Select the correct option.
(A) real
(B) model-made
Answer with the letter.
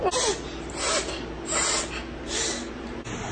A